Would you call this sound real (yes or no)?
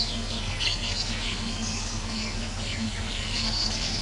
no